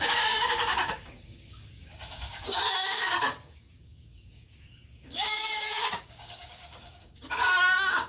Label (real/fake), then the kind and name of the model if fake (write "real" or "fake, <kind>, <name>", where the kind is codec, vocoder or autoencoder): fake, codec, DAC